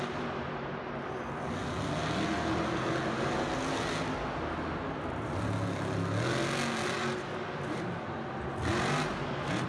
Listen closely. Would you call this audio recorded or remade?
recorded